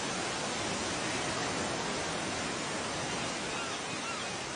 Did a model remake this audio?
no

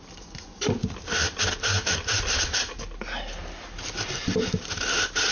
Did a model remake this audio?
no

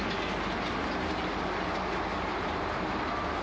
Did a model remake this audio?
no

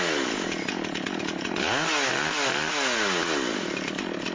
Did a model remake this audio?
no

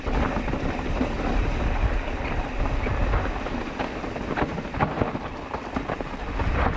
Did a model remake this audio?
no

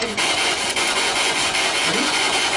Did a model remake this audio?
yes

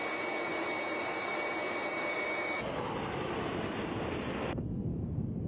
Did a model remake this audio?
no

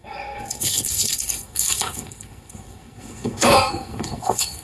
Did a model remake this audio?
yes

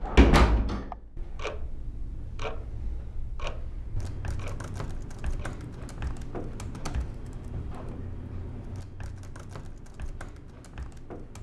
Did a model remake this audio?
no